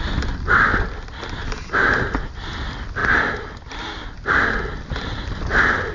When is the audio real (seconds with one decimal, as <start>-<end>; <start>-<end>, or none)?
0.0-5.9